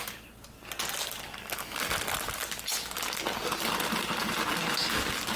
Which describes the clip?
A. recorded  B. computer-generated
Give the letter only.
A